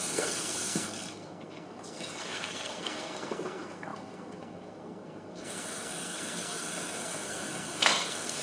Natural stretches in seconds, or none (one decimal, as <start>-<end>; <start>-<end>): none

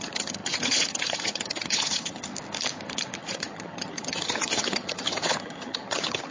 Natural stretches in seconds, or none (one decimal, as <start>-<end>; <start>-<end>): 2.3-3.2

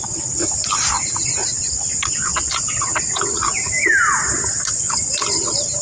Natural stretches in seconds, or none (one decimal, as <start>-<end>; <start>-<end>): 0.0-5.8

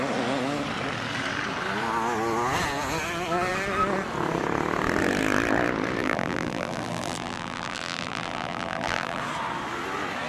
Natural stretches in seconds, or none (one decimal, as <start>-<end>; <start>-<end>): 0.0-6.0; 9.2-10.3

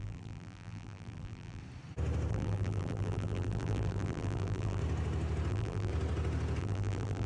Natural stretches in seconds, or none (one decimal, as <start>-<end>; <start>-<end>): 1.6-2.3; 4.8-5.5; 5.9-6.6

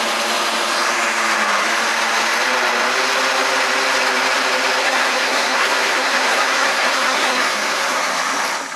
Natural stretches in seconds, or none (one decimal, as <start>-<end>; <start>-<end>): 0.0-4.8; 8.0-8.8

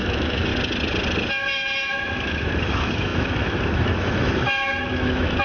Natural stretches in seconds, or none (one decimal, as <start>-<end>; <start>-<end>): 0.5-1.3